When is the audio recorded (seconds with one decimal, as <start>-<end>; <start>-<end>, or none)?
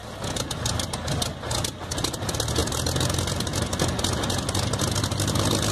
0.0-5.7